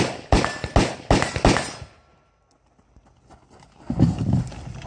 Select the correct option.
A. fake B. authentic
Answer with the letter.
B